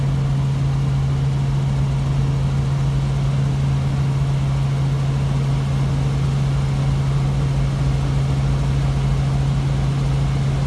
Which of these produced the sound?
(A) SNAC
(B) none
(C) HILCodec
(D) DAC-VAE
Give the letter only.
B